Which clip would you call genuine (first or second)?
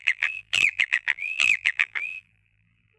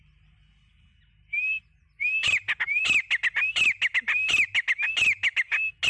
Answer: second